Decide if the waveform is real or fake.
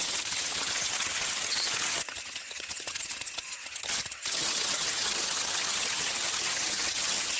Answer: fake